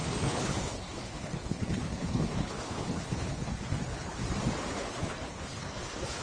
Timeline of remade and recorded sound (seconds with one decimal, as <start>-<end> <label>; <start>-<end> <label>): 0.0-4.2 remade; 4.2-4.7 recorded; 4.7-6.2 remade